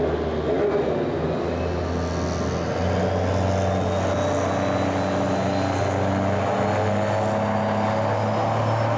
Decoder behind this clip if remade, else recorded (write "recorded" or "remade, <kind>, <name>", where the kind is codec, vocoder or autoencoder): recorded